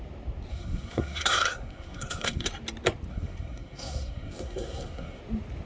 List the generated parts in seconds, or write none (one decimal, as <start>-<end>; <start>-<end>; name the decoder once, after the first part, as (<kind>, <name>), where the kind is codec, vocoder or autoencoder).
0.5-2.5 (codec, SNAC); 3.1-5.2